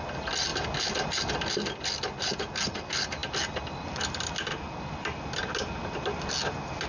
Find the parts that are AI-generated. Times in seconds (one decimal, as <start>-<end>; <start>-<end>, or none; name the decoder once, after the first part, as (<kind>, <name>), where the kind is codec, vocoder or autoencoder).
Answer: none